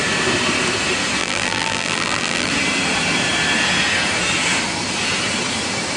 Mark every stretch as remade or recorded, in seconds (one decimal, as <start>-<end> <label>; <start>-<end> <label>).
0.0-1.2 recorded; 1.2-2.5 remade; 2.5-6.0 recorded